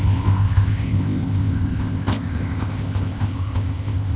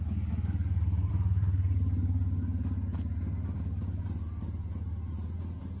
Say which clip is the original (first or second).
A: second